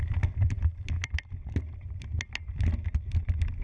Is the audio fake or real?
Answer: real